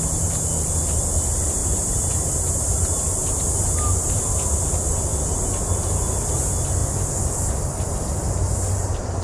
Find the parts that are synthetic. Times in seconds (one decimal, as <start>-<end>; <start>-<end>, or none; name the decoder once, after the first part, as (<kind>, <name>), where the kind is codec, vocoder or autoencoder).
1.6-3.4 (vocoder, BigVGAN v2)